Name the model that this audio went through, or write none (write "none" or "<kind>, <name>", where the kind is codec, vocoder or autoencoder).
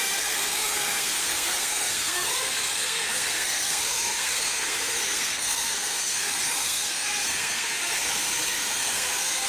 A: codec, SNAC